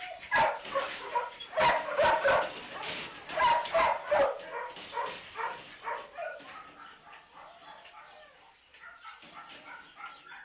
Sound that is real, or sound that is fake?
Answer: fake